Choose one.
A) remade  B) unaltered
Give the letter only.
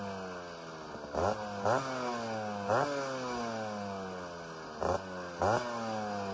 B